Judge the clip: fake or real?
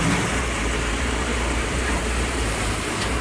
fake